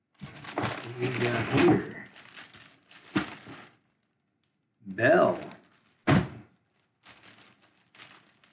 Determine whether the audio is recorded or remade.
recorded